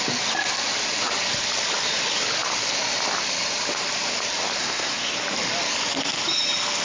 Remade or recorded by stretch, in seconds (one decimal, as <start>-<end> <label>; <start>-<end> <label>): 0.0-4.6 recorded; 4.6-5.1 remade; 5.1-6.8 recorded